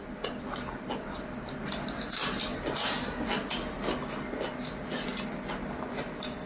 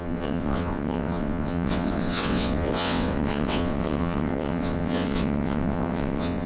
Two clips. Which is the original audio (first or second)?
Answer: first